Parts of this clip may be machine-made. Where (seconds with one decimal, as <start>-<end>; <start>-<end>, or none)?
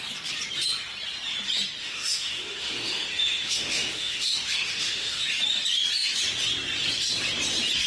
1.8-5.3